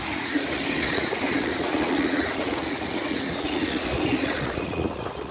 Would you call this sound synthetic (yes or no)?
yes